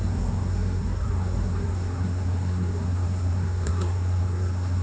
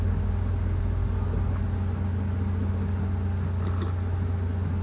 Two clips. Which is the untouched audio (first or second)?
second